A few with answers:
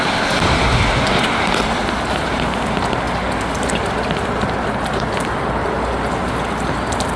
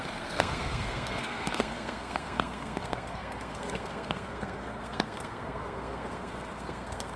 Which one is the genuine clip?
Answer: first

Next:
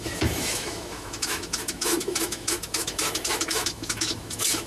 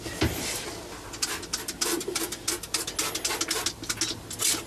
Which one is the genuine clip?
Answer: second